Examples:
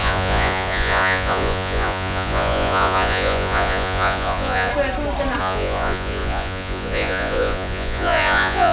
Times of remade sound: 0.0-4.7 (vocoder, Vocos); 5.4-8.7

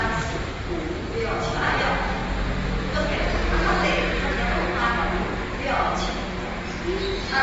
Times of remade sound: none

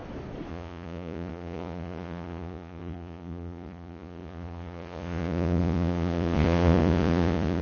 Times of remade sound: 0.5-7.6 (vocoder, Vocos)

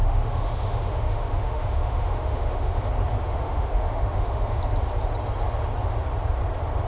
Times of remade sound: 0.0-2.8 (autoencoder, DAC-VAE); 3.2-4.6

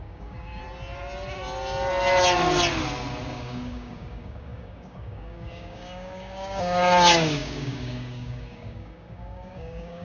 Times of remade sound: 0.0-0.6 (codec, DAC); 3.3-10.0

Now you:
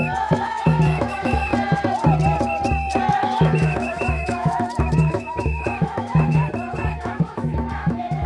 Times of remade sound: 0.0-1.5 (autoencoder, DAC-VAE); 3.1-6.4; 6.9-8.3

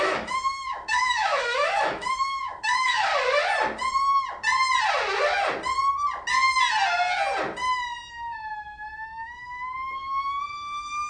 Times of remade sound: 0.0-3.1 (autoencoder, DAC-VAE); 8.1-11.1